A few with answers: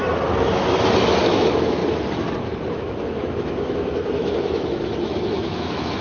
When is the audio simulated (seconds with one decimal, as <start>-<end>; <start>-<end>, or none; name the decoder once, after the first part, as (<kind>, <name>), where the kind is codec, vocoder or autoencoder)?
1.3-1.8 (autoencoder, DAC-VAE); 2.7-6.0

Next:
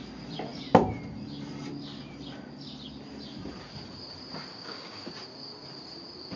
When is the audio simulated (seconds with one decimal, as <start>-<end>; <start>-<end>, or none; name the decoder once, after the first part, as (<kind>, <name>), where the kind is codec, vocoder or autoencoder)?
4.5-5.1 (codec, DAC)

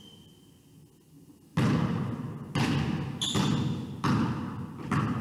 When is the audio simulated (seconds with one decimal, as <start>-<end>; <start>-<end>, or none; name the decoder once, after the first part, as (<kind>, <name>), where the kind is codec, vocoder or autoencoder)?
none

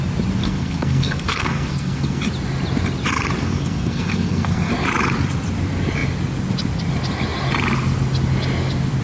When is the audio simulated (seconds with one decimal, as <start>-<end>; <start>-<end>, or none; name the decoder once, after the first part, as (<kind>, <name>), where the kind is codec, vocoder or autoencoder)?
0.4-2.2 (codec, SNAC); 3.4-4.7

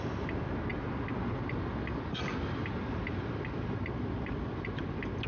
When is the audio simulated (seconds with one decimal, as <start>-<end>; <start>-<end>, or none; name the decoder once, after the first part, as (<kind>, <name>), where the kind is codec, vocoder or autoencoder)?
none